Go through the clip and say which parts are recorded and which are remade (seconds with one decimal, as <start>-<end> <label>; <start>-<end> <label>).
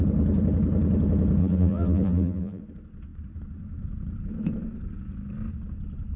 0.0-1.4 recorded; 1.4-2.6 remade; 2.6-6.2 recorded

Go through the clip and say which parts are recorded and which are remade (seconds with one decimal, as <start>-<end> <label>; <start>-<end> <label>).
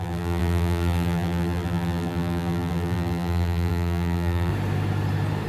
0.0-4.5 remade; 4.5-5.5 recorded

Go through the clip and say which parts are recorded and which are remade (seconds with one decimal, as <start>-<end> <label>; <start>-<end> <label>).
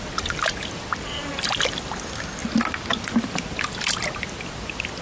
0.0-2.4 remade; 2.4-3.0 recorded; 3.0-5.0 remade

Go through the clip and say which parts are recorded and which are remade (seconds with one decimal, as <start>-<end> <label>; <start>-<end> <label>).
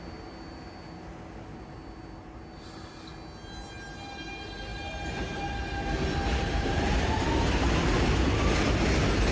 0.0-6.3 recorded; 6.3-7.6 remade; 7.6-9.3 recorded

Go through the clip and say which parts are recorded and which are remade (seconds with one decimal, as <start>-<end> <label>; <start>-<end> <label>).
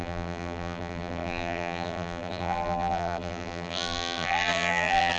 0.0-5.2 remade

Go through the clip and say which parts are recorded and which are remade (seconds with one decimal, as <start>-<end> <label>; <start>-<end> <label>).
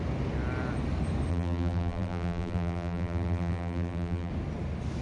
0.0-1.3 recorded; 1.3-4.3 remade; 4.3-5.0 recorded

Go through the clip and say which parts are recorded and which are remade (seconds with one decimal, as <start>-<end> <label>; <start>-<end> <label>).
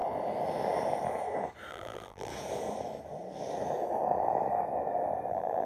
0.0-1.7 recorded; 1.7-2.3 remade; 2.3-5.3 recorded; 5.3-5.7 remade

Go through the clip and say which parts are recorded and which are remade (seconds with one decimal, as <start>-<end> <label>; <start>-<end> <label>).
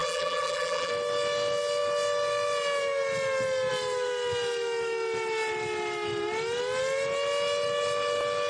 0.0-0.9 remade; 0.9-8.5 recorded